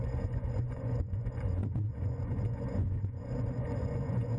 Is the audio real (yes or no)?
no